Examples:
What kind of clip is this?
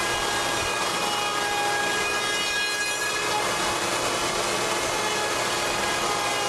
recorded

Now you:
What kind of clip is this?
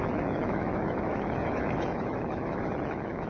remade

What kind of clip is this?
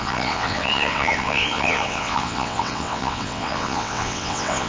remade